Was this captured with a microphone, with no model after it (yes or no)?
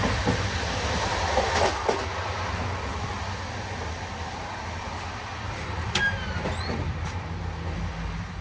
yes